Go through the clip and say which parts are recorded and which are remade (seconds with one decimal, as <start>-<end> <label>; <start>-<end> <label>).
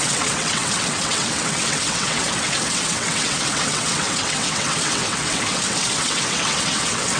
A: 0.0-7.2 remade